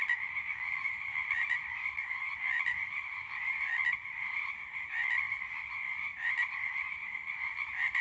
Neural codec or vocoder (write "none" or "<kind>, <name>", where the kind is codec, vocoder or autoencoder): vocoder, BigVGAN v2